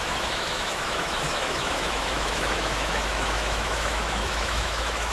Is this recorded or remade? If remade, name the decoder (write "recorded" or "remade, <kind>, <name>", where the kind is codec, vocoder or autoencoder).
remade, autoencoder, DAC-VAE